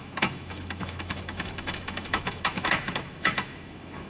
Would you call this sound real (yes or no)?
no